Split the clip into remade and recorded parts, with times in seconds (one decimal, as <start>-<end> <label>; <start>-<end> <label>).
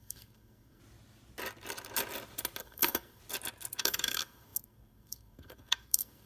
0.0-0.8 remade; 0.8-2.6 recorded; 2.6-3.2 remade; 3.2-3.8 recorded; 3.8-6.3 remade